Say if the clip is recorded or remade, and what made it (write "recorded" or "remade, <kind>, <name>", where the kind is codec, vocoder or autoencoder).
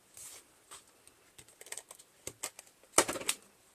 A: recorded